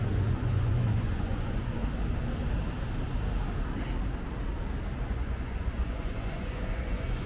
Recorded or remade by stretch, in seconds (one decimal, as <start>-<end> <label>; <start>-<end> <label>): 0.0-1.8 remade; 1.8-5.1 recorded; 5.1-7.3 remade